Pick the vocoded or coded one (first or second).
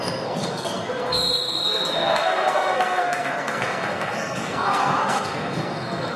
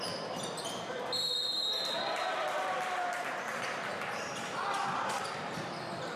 first